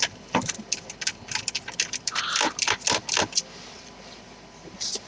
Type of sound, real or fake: real